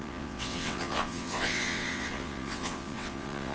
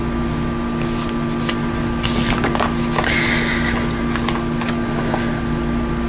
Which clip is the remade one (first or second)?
first